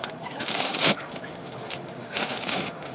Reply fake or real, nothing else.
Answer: fake